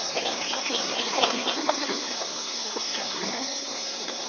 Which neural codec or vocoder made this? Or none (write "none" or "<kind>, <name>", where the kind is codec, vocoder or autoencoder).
codec, SNAC